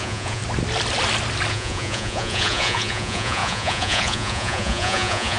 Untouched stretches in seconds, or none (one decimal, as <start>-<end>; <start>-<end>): 0.4-1.5